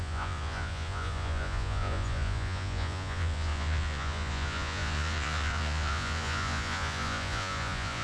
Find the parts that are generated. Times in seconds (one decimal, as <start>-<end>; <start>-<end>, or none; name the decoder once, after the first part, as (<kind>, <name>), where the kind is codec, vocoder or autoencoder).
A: 0.0-8.0 (vocoder, Vocos)

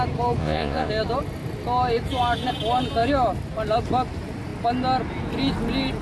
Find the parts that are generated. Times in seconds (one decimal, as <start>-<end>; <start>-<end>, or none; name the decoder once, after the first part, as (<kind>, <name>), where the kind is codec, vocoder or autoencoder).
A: 0.4-0.9 (vocoder, Vocos)

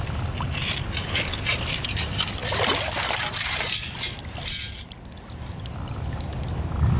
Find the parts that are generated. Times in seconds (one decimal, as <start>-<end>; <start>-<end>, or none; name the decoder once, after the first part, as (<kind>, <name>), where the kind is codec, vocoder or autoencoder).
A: none

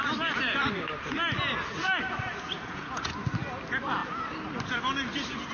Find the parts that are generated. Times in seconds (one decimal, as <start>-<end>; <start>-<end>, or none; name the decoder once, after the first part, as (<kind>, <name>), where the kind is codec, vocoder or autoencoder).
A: 2.3-3.0 (vocoder, Vocos)

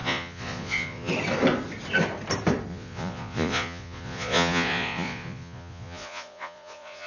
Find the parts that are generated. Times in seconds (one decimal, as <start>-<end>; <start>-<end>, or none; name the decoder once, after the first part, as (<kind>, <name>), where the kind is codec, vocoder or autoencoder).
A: 0.0-1.1 (vocoder, Vocos); 2.7-7.1

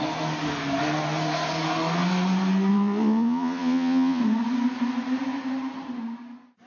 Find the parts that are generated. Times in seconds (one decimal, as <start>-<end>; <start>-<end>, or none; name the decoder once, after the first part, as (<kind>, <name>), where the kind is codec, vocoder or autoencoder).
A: 2.7-4.2 (vocoder, Vocos)

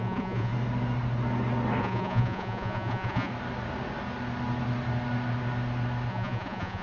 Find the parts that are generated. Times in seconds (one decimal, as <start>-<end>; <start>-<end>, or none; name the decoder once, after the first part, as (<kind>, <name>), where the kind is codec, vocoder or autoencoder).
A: 0.0-0.5 (vocoder, Vocos); 1.8-3.3; 6.1-6.8

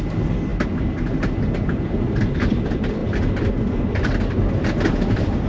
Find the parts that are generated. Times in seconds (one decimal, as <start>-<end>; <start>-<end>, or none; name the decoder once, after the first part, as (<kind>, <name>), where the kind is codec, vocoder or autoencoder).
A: none